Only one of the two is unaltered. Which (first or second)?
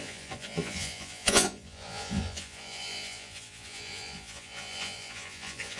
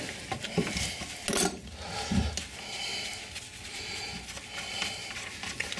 second